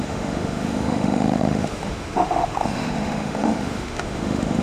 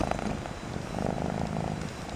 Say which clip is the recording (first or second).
second